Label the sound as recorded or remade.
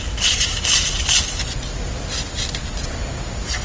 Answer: recorded